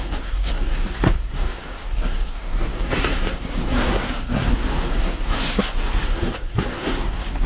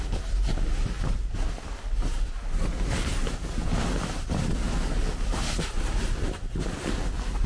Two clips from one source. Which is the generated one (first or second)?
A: first